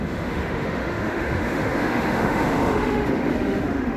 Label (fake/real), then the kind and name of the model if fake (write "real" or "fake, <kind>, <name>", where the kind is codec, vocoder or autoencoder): fake, autoencoder, DAC-VAE